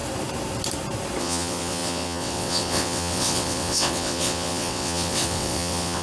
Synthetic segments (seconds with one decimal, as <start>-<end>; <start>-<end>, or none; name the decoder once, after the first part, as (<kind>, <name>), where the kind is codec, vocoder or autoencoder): 1.2-6.0 (vocoder, WaveNeXt)

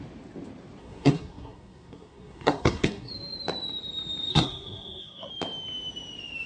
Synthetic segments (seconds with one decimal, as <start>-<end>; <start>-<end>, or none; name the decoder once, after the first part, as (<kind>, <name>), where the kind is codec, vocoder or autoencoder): 0.8-3.1 (codec, SNAC); 4.3-5.3